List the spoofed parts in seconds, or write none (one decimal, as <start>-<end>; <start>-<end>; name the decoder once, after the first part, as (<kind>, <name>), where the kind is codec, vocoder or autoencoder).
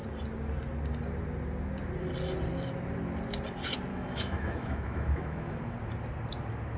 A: 3.9-5.6 (autoencoder, DAC-VAE)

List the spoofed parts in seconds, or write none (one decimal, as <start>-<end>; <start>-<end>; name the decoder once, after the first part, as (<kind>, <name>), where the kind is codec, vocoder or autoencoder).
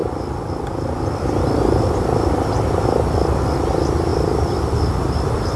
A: none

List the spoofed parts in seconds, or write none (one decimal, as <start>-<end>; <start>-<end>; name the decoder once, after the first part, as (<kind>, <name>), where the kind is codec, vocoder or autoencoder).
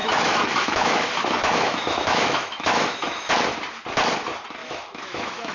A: 0.0-3.3 (autoencoder, DAC-VAE); 4.6-5.5